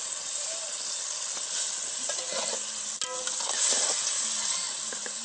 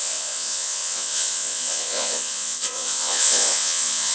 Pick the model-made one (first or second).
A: second